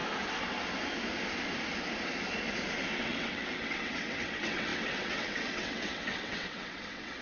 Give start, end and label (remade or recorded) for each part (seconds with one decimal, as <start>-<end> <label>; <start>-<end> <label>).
0.0-2.9 recorded; 2.9-7.2 remade

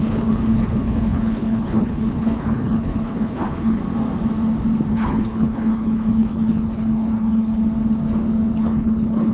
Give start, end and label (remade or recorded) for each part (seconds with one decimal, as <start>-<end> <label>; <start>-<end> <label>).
0.0-3.8 remade; 3.8-4.9 recorded; 4.9-7.6 remade; 7.6-8.6 recorded; 8.6-9.3 remade